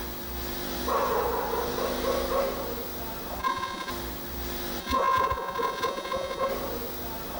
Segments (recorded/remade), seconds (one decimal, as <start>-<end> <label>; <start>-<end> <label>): 0.0-3.4 recorded; 3.4-3.9 remade; 3.9-4.8 recorded; 4.8-6.5 remade; 6.5-7.4 recorded